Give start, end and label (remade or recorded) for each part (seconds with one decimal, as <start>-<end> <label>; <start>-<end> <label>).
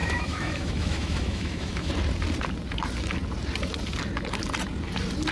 0.0-1.9 remade; 1.9-5.3 recorded